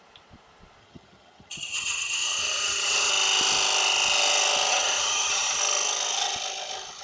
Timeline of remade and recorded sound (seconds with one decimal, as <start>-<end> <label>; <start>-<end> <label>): 0.0-0.8 recorded; 0.8-3.1 remade; 3.1-4.7 recorded; 4.7-5.6 remade; 5.6-7.0 recorded